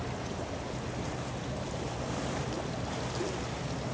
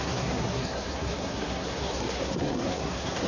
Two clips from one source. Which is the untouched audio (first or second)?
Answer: first